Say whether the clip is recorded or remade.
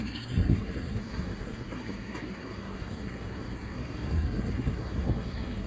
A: remade